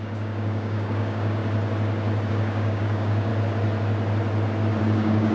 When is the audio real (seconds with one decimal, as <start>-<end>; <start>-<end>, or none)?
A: 1.4-2.3; 3.3-4.8